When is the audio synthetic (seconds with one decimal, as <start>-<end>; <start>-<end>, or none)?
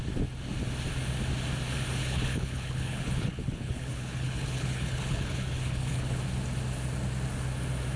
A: 2.0-6.2